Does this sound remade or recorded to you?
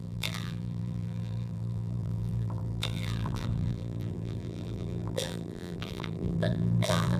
remade